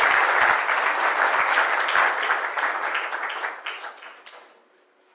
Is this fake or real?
real